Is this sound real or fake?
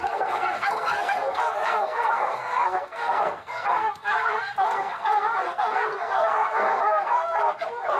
fake